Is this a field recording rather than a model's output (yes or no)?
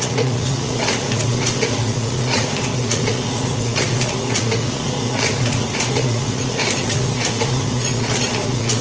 no